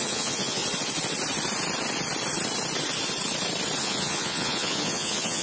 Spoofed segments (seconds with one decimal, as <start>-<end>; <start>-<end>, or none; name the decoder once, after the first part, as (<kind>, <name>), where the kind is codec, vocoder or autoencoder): 0.0-0.6 (vocoder, Vocos); 3.8-5.4